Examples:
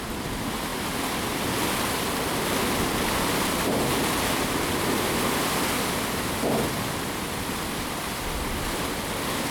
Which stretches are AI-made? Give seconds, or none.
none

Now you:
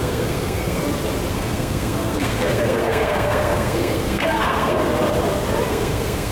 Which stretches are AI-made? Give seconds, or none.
0.0-0.8 (codec, SNAC); 1.3-4.8; 5.7-6.3

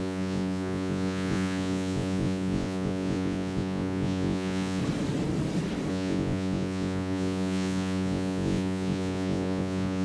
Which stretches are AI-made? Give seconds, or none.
0.0-4.8 (vocoder, Vocos); 5.9-10.0

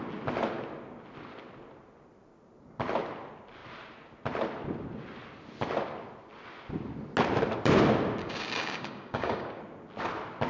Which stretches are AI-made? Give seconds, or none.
8.2-9.6 (codec, DAC)

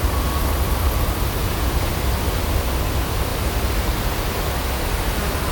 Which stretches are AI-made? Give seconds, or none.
1.4-1.9 (vocoder, Vocos)